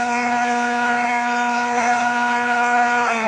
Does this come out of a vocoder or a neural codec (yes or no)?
yes